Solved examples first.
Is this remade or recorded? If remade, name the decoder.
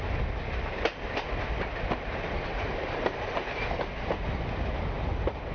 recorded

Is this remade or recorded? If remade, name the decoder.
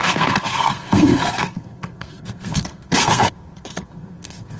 remade, codec, SNAC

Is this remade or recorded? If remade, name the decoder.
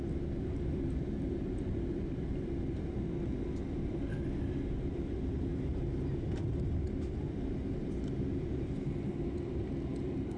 recorded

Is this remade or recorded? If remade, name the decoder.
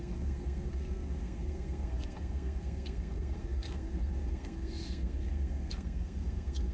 remade, codec, SNAC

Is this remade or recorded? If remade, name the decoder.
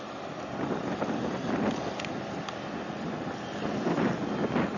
recorded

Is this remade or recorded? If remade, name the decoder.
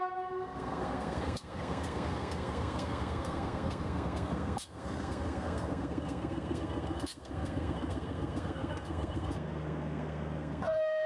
remade, codec, SNAC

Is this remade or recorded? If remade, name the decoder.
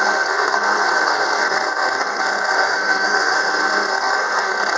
remade, codec, SNAC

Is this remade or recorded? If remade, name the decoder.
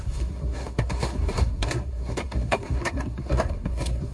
remade, codec, SNAC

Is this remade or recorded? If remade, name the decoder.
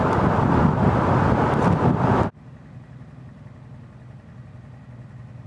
recorded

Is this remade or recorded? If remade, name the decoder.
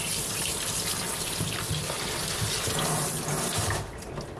recorded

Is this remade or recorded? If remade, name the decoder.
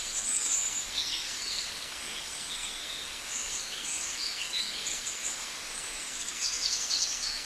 remade, codec, SNAC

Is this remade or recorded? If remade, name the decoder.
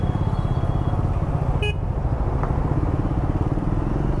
recorded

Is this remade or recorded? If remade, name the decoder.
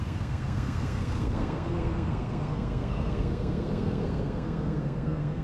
remade, codec, SNAC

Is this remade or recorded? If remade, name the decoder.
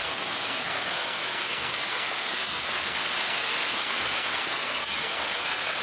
remade, codec, SNAC